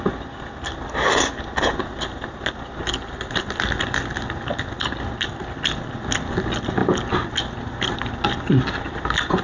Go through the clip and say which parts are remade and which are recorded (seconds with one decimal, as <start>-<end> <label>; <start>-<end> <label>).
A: 0.0-9.4 recorded